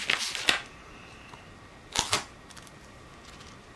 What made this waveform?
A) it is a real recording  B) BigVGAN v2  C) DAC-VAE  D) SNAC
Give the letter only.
A